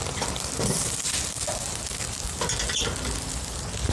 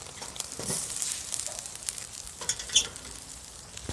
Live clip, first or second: first